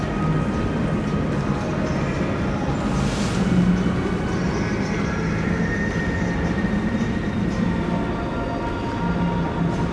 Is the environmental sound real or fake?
real